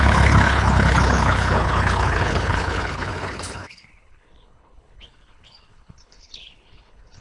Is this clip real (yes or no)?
no